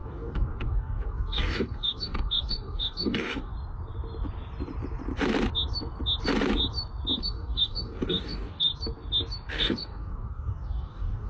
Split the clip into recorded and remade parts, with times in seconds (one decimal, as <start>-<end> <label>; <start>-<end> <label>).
0.0-3.5 remade; 3.5-7.2 recorded; 7.2-8.7 remade; 8.7-9.5 recorded; 9.5-11.3 remade